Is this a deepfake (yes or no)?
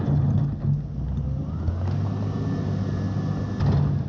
no